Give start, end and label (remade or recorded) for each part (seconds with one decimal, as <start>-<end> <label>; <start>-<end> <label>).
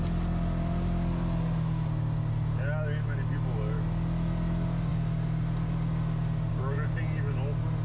0.0-7.8 recorded